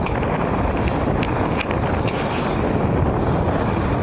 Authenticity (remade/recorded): recorded